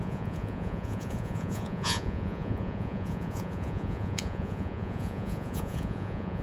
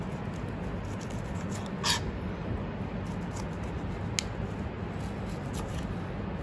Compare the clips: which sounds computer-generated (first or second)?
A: first